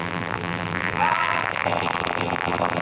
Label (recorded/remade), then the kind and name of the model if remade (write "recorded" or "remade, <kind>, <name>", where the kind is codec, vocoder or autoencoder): remade, vocoder, BigVGAN v2